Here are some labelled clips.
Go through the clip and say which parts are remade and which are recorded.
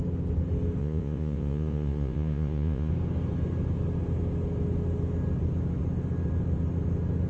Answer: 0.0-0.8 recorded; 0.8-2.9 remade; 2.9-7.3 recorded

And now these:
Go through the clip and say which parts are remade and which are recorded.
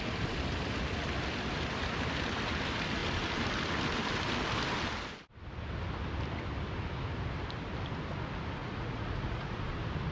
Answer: 0.0-8.6 recorded; 8.6-9.6 remade; 9.6-10.1 recorded